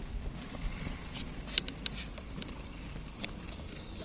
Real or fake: fake